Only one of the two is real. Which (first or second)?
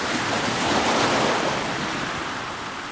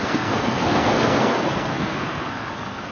first